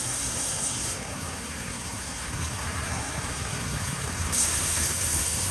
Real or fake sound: fake